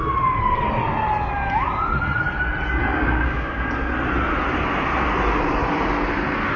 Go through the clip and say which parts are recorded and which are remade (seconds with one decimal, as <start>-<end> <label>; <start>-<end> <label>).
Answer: 0.0-2.9 recorded; 2.9-3.6 remade; 3.6-6.6 recorded